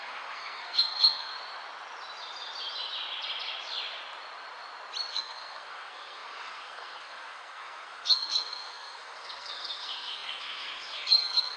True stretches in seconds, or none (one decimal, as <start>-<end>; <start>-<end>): 1.3-5.1